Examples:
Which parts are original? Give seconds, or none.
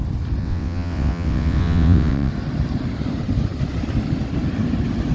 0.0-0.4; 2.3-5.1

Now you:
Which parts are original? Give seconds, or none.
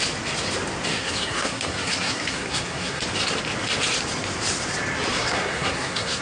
0.0-0.9; 3.0-5.1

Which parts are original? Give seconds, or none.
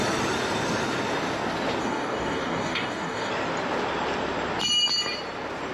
0.0-1.8; 3.3-5.7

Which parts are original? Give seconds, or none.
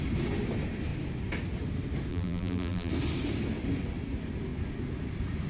0.0-2.1; 2.9-5.5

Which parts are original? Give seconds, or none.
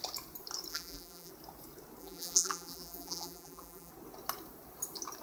0.0-0.7; 1.3-2.0; 3.9-5.2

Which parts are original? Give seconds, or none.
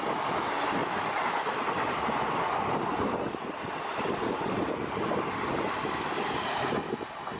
0.0-0.8; 1.9-2.9; 5.2-7.4